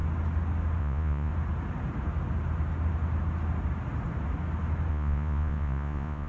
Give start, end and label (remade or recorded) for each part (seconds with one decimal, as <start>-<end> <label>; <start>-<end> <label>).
0.0-0.8 recorded; 0.8-1.3 remade; 1.3-4.9 recorded; 4.9-6.3 remade